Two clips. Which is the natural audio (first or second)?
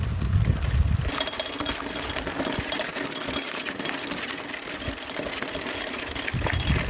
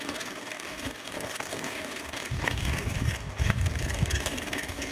first